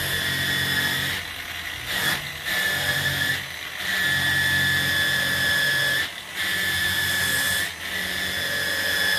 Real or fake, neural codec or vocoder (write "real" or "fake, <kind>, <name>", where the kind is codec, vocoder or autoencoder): real